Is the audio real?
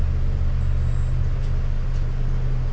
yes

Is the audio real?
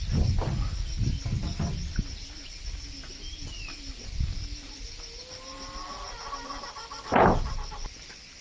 yes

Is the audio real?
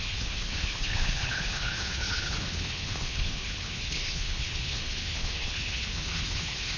no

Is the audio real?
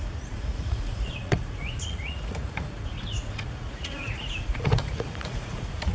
no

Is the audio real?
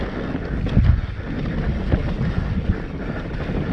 yes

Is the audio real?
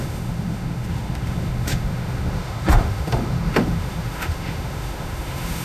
no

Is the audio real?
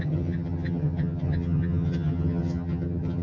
no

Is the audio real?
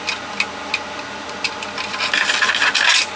yes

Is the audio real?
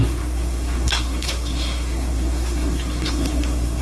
no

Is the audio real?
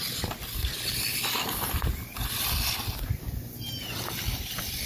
yes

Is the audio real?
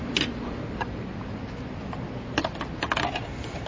yes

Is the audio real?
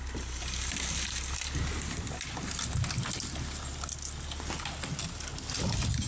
yes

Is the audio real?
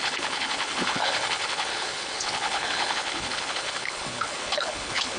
no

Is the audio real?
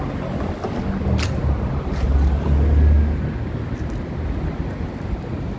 yes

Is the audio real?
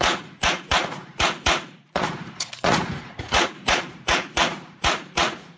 no